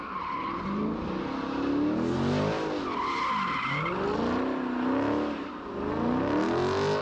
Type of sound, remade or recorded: recorded